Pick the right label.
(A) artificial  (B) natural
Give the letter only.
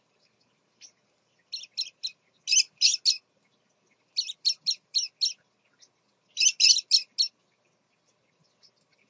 B